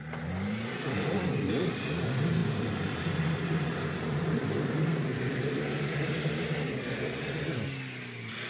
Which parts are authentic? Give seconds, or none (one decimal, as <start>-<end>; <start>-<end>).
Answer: 0.0-2.4; 6.1-8.5